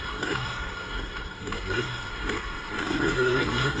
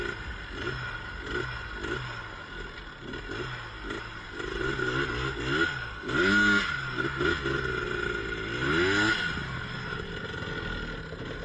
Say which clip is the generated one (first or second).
first